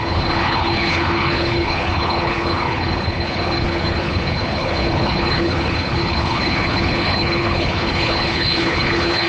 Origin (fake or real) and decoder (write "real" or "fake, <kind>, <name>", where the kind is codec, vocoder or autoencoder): fake, codec, HILCodec